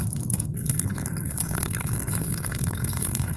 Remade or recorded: remade